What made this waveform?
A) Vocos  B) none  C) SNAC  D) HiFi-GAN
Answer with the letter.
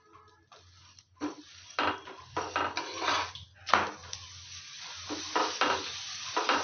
B